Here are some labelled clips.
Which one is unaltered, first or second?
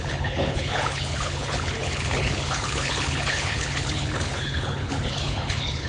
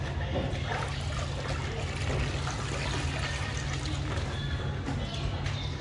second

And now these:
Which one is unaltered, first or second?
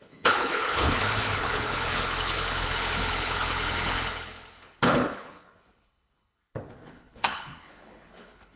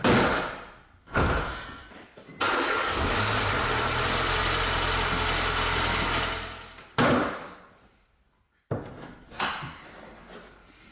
second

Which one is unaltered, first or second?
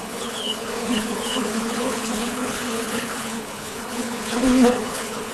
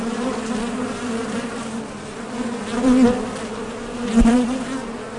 second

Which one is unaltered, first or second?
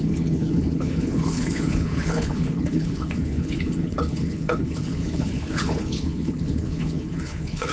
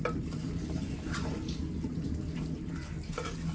second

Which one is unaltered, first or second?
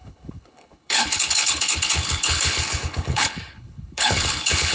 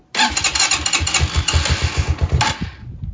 second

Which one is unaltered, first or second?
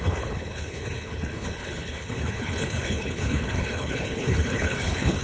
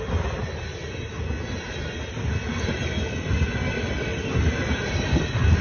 second